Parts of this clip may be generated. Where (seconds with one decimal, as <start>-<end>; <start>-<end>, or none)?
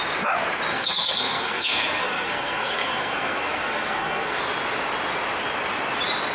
0.7-4.4